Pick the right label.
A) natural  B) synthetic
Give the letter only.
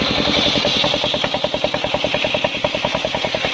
A